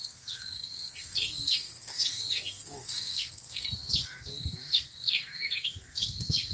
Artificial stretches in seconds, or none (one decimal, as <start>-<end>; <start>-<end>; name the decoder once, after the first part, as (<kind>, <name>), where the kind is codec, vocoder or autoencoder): 0.0-6.5 (codec, SNAC)